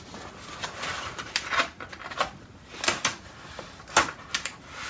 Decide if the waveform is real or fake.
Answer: real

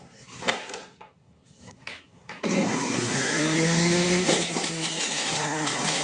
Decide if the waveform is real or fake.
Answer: fake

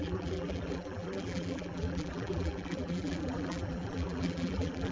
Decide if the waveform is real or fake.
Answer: fake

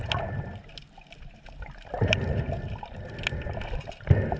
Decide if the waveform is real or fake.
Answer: real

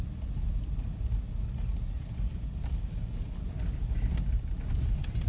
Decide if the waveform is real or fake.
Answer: real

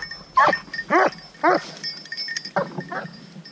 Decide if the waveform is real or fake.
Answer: real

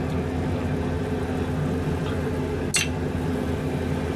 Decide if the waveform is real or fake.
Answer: real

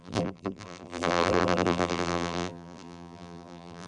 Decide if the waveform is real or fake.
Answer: fake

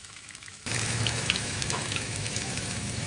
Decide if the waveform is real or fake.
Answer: fake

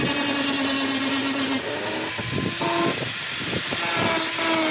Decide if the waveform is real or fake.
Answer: real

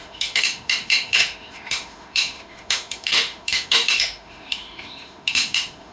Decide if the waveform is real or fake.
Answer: fake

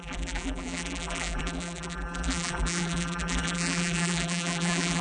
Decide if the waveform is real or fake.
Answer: fake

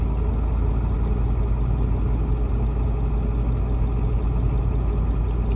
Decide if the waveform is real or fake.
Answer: real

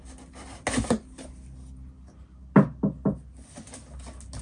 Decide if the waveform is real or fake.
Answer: real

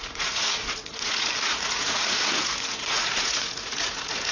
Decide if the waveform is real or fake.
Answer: fake